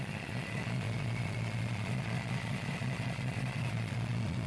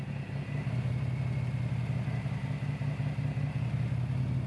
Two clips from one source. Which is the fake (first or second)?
first